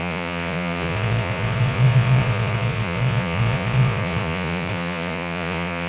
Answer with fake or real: fake